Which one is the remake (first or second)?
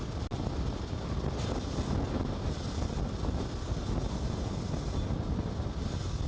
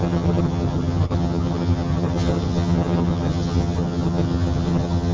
second